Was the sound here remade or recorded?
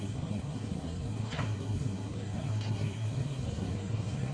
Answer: remade